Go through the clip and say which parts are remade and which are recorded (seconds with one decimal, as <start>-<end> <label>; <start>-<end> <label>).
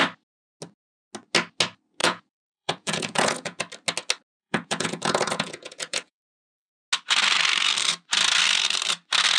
0.0-2.0 recorded; 2.0-3.6 remade; 3.6-4.4 recorded; 4.4-6.7 remade; 6.7-9.4 recorded